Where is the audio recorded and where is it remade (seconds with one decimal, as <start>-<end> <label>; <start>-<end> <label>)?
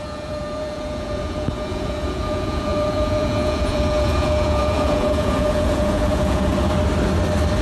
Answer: 0.0-6.5 remade; 6.5-7.6 recorded